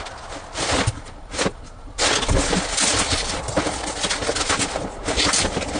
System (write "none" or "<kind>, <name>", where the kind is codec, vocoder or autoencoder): none